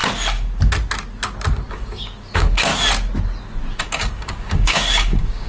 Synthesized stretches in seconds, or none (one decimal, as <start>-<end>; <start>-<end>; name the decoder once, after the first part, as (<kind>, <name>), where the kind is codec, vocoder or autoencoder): 1.7-2.7 (codec, DAC); 3.8-5.5